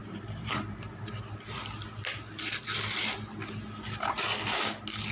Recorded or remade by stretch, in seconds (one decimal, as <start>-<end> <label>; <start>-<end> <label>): 0.0-1.1 remade; 1.1-5.1 recorded